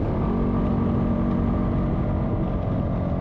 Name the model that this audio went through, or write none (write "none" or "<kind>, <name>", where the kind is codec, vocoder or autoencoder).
none